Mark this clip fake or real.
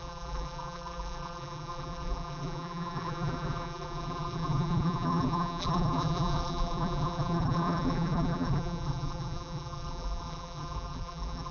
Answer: fake